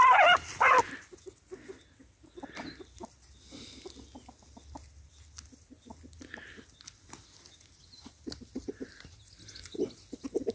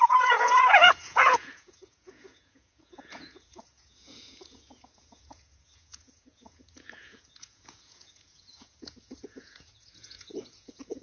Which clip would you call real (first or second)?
first